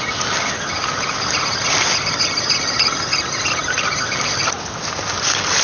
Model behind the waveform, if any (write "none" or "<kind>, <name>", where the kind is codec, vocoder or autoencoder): none